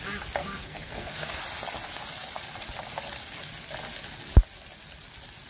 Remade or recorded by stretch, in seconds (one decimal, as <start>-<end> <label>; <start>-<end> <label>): 0.0-0.4 recorded; 0.4-1.4 remade; 1.4-5.5 recorded